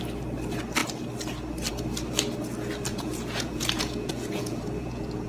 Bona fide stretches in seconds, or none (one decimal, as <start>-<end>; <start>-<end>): 0.0-2.9